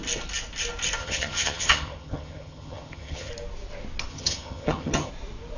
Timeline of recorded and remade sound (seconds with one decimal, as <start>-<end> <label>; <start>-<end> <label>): 0.0-1.0 recorded; 1.0-3.3 remade; 3.3-4.1 recorded; 4.1-5.1 remade; 5.1-5.6 recorded